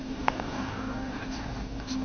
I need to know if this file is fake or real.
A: fake